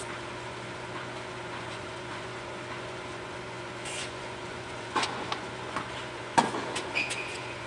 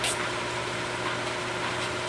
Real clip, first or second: second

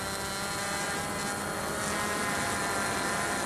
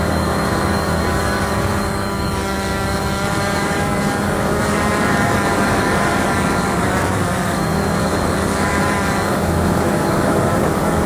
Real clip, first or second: first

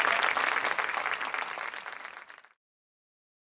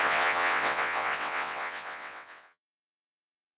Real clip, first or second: first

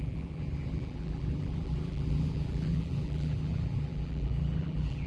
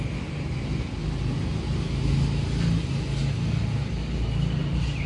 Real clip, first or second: second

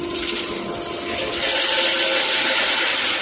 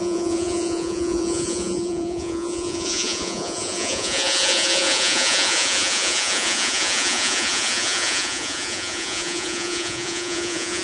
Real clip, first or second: first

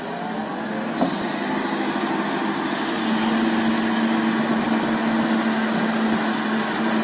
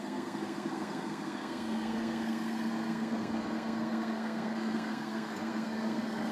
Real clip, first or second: first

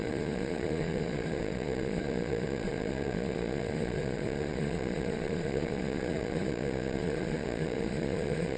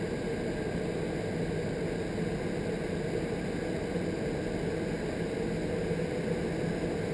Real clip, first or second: second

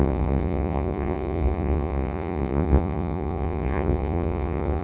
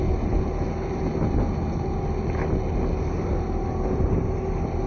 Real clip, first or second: second